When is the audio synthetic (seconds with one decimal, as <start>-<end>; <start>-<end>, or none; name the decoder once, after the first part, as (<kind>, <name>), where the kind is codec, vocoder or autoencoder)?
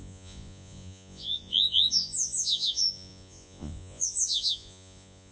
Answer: 0.0-5.3 (vocoder, Vocos)